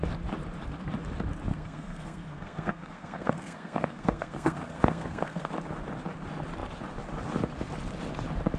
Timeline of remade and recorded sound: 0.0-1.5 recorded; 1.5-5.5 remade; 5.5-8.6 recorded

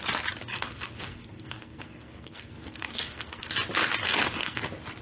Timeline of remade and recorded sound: 0.0-0.5 recorded; 0.5-3.5 remade; 3.5-4.0 recorded; 4.0-4.6 remade; 4.6-5.0 recorded

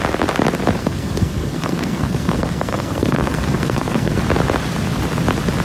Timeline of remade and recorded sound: 0.0-0.8 recorded; 0.8-4.2 remade; 4.2-5.6 recorded